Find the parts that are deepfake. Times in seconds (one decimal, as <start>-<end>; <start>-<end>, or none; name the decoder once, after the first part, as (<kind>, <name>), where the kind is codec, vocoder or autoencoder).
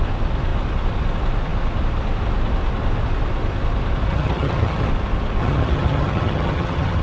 4.1-4.9 (vocoder, HiFi-GAN); 5.4-7.0